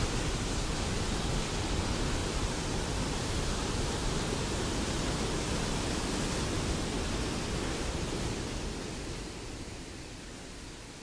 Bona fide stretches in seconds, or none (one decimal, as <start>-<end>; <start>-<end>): 0.0-2.2; 5.4-11.0